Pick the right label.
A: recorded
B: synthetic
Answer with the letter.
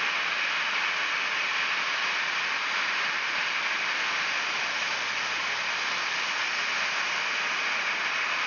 A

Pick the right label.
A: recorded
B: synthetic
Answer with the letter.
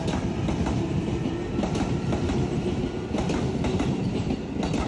A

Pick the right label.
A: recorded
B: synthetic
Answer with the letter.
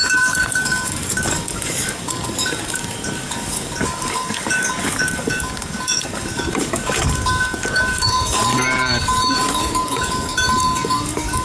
B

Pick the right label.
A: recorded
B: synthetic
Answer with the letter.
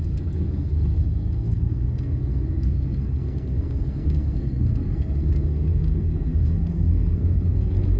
B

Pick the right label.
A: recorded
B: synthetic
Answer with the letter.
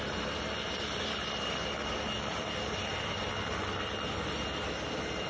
A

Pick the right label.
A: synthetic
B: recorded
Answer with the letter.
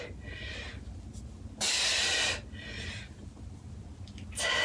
B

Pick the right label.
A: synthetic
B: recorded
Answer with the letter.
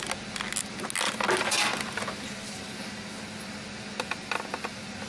B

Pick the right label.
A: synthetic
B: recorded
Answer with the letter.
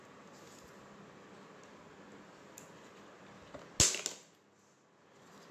B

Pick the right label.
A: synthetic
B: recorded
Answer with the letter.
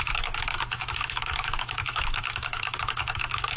A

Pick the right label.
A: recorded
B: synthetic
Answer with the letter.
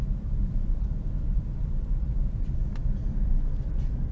B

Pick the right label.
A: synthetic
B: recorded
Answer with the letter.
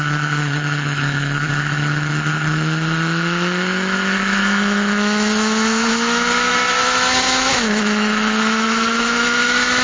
A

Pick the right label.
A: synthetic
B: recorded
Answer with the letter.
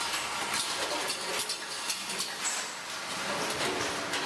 B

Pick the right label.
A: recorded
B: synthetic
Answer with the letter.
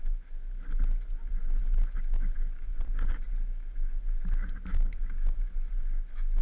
A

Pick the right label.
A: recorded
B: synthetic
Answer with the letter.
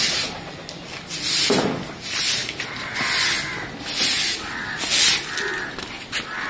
A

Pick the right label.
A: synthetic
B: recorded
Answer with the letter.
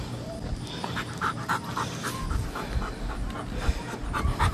B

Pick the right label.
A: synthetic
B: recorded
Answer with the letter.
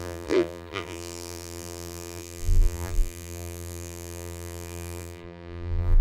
A